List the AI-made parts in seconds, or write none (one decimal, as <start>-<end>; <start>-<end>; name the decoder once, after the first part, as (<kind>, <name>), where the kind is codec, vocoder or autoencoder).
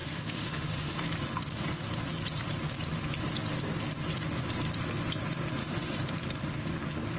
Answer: 0.0-1.0 (autoencoder, DAC-VAE); 5.6-6.1